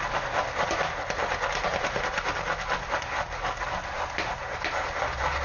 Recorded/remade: recorded